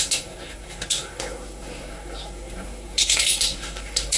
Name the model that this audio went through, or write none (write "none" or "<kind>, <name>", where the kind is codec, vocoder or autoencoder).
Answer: codec, SNAC